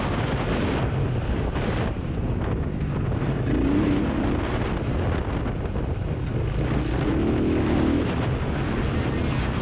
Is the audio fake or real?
real